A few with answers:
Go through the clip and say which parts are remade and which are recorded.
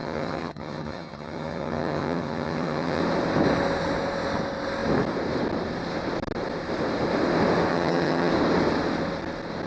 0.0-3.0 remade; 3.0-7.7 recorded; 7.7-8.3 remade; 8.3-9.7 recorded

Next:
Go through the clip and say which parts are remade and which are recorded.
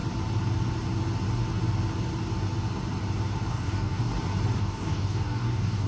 0.0-3.5 recorded; 3.5-4.1 remade; 4.1-4.6 recorded; 4.6-5.9 remade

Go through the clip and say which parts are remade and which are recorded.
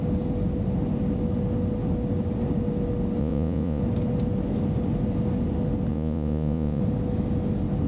0.0-3.2 recorded; 3.2-3.8 remade; 3.8-5.9 recorded; 5.9-6.8 remade; 6.8-7.9 recorded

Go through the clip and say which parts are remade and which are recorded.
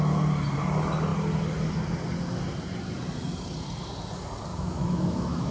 0.0-4.5 recorded; 4.5-5.5 remade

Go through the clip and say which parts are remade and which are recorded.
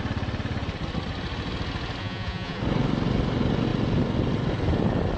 0.0-2.0 recorded; 2.0-2.6 remade; 2.6-5.2 recorded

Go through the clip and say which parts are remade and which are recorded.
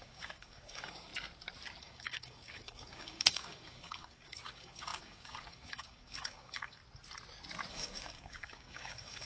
0.0-1.1 remade; 1.1-1.8 recorded; 1.8-6.8 remade; 6.8-7.7 recorded; 7.7-9.3 remade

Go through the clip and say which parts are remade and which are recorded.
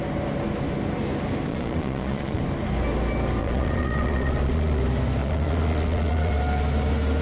0.0-1.5 recorded; 1.5-2.4 remade; 2.4-3.4 recorded; 3.4-4.8 remade; 4.8-5.2 recorded; 5.2-6.3 remade; 6.3-7.2 recorded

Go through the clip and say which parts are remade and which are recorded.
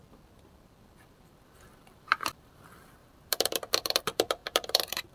0.0-5.1 remade